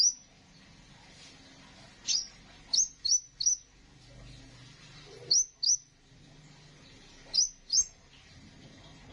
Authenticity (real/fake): real